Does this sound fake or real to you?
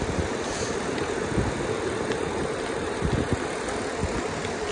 real